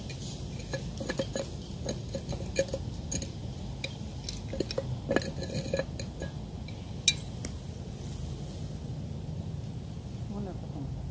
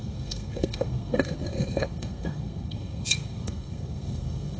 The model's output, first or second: second